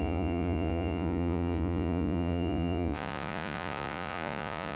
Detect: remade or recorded remade